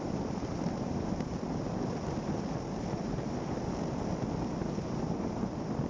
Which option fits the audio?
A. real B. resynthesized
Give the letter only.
B